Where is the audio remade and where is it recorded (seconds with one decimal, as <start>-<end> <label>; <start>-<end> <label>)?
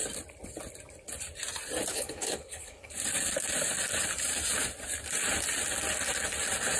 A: 0.0-1.9 recorded; 1.9-2.9 remade; 2.9-6.8 recorded